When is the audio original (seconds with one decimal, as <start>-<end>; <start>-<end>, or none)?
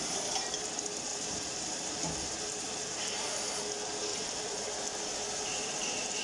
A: 0.0-1.1; 3.6-4.1; 4.7-6.2